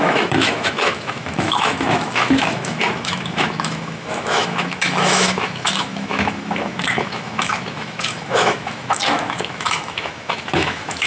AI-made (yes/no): yes